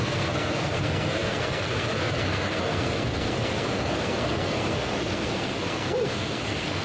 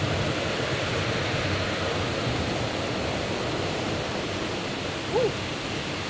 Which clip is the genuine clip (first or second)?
second